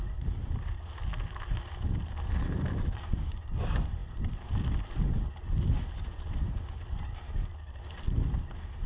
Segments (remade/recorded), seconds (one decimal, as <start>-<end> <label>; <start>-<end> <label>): 0.0-8.9 recorded